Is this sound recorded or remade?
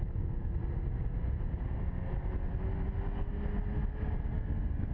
recorded